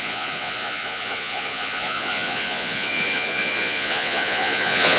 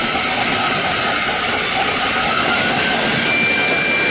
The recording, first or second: second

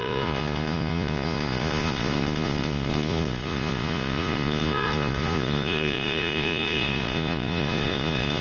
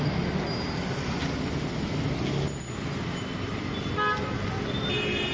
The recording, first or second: second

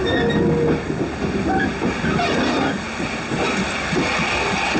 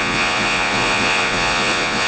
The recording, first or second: first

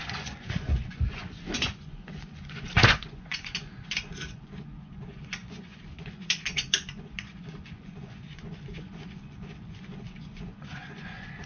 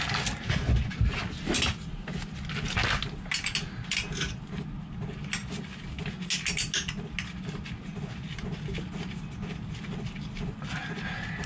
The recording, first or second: second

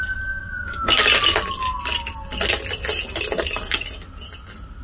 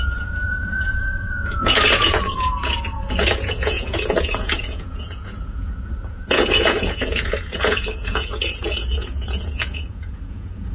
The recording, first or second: first